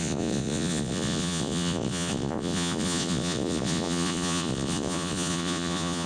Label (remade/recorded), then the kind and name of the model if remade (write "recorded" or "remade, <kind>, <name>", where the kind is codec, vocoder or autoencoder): remade, vocoder, Vocos